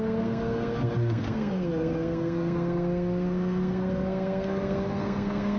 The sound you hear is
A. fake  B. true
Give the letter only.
A